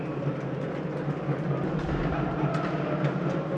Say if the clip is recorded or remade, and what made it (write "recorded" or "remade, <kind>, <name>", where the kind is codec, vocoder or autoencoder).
recorded